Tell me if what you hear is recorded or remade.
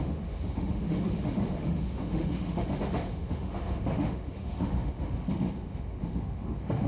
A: remade